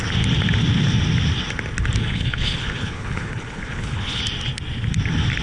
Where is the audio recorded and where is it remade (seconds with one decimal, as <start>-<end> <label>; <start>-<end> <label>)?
0.0-2.0 recorded; 2.0-4.2 remade; 4.2-5.4 recorded